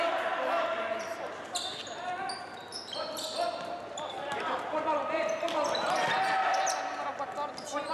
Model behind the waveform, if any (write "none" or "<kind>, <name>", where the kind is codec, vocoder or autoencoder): none